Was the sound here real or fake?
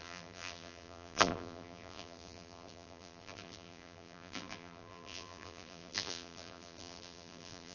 fake